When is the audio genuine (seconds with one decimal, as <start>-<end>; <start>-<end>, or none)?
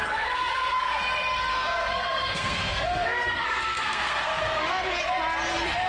1.0-1.5; 5.0-5.9